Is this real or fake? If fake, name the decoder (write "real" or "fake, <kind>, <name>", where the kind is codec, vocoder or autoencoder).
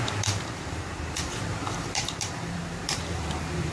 fake, vocoder, BigVGAN v2